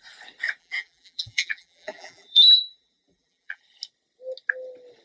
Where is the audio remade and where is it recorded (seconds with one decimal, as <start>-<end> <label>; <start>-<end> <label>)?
0.0-0.6 recorded; 0.6-3.6 remade; 3.6-5.0 recorded